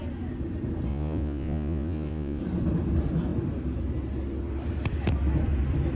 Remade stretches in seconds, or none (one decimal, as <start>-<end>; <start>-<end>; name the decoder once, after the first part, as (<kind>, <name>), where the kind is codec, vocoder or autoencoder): 0.9-2.4 (vocoder, Vocos)